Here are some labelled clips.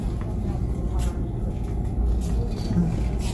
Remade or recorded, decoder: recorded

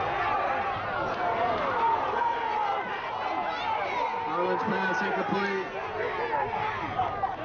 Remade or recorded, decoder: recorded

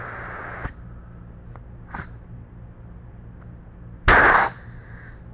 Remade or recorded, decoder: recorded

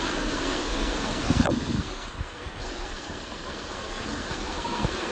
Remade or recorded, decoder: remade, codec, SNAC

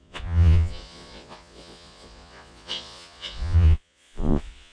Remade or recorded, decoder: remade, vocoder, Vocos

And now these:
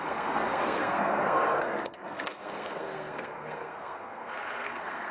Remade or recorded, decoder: remade, codec, SNAC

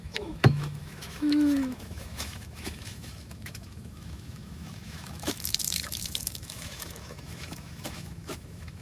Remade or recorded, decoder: remade, autoencoder, DAC-VAE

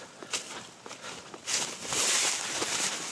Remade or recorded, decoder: recorded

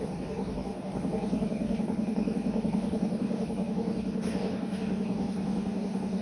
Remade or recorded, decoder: remade, codec, DAC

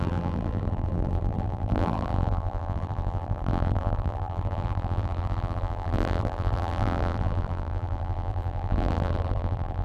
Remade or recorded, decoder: remade, vocoder, BigVGAN v2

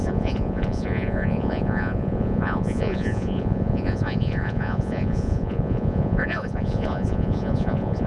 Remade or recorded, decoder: remade, vocoder, Vocos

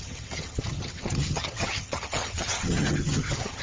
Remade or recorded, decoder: remade, vocoder, HiFi-GAN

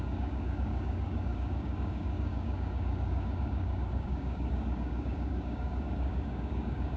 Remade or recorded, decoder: remade, codec, DAC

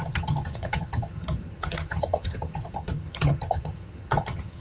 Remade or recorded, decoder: remade, vocoder, HiFi-GAN